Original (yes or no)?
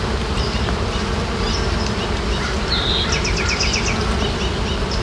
yes